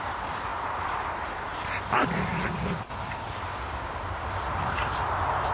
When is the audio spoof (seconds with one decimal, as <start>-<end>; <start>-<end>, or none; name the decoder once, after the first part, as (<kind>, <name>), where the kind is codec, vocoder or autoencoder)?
0.0-2.3 (vocoder, BigVGAN v2); 4.8-5.5